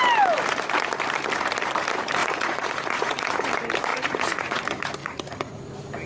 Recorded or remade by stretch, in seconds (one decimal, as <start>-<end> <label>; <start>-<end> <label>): 0.0-2.2 recorded; 2.2-3.5 remade; 3.5-3.9 recorded; 3.9-4.6 remade; 4.6-5.0 recorded; 5.0-5.6 remade; 5.6-6.1 recorded

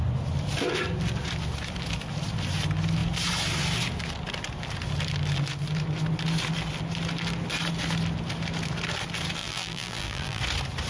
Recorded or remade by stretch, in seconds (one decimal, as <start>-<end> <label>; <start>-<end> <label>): 0.0-9.4 recorded; 9.4-10.4 remade; 10.4-10.9 recorded